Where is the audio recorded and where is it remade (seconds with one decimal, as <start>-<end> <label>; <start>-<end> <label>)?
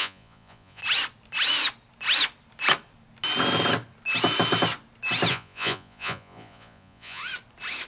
0.0-0.8 remade; 0.8-5.3 recorded; 5.3-7.2 remade; 7.2-7.9 recorded